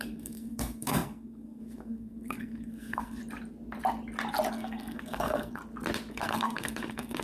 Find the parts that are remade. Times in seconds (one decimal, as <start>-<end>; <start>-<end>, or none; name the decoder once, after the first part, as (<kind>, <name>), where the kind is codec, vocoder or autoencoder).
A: 0.0-3.2 (codec, SNAC); 4.5-5.6; 6.1-7.2